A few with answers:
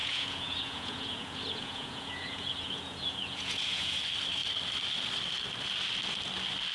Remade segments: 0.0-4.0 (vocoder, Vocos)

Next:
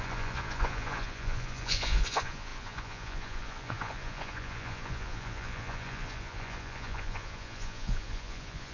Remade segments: 0.0-8.7 (vocoder, Vocos)

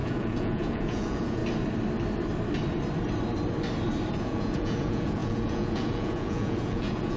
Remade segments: 0.0-1.4 (vocoder, Vocos); 4.1-7.2

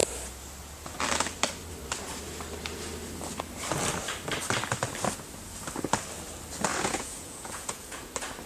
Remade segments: 6.7-8.1 (vocoder, Vocos)

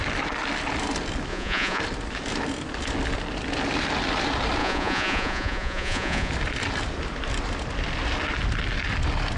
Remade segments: 1.3-1.8 (vocoder, Vocos); 4.6-6.3

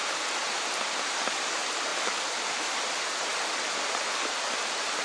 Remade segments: none

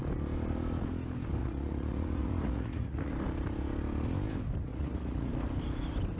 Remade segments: 1.4-3.1 (vocoder, Vocos); 4.7-5.3